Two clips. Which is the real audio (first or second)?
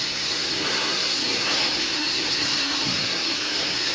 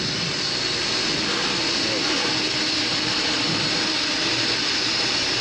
second